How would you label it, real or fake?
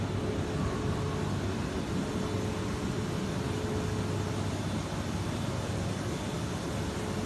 real